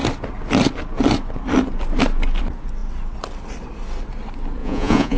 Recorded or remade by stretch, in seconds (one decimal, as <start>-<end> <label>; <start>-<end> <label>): 0.0-4.6 recorded; 4.6-5.2 remade